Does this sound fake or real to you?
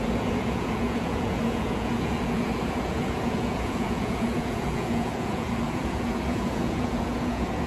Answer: fake